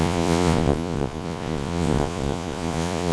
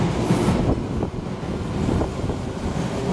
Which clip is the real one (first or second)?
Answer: second